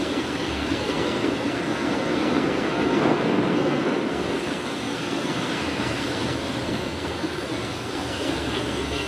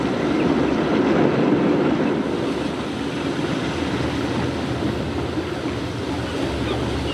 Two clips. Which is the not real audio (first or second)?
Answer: first